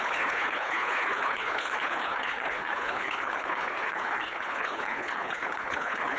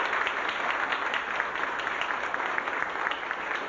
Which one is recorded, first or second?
second